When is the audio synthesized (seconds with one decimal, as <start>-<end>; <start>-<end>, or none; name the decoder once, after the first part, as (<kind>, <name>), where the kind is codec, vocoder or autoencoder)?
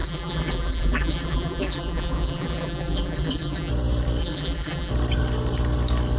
0.0-3.7 (vocoder, BigVGAN v2); 4.2-4.9